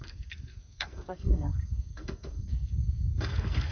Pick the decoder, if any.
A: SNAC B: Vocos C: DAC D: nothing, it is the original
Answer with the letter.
A